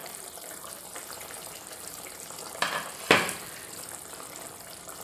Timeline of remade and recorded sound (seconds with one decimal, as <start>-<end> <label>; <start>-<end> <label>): 0.0-2.9 remade; 2.9-5.0 recorded